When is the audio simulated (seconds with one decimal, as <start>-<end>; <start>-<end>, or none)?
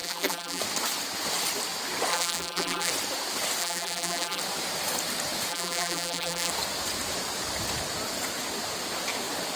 0.0-0.6; 2.1-2.9; 3.6-4.4; 5.5-6.5